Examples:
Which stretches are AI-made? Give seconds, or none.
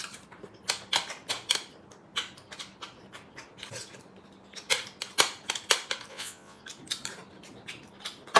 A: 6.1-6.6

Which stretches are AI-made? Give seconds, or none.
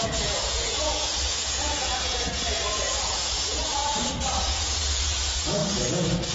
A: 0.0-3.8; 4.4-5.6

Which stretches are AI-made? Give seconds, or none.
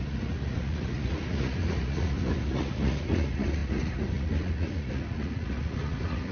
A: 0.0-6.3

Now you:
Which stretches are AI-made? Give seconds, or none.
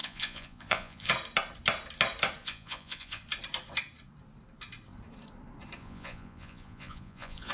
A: 0.0-1.1; 2.4-3.2; 5.8-7.5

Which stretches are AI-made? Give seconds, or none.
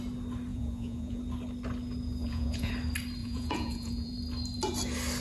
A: 0.5-1.2; 2.2-2.7; 3.2-4.1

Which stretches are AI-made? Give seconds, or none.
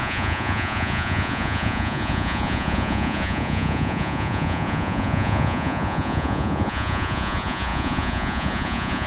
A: 0.0-9.1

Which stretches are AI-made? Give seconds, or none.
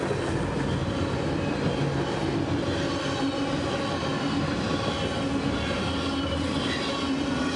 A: none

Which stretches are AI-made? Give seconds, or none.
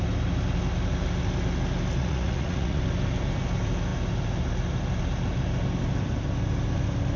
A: 2.0-2.8